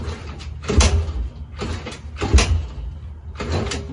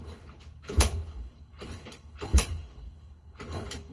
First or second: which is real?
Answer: first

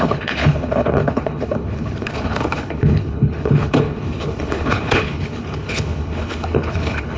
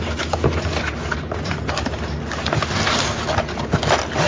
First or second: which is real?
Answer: second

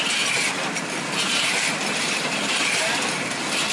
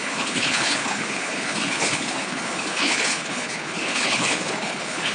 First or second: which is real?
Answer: first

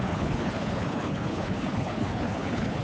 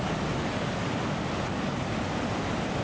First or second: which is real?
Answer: second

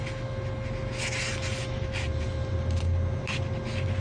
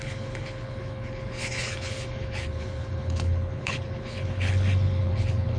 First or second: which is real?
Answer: first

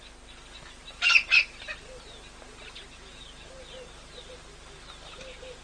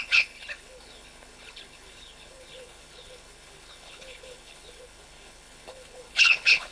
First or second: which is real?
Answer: first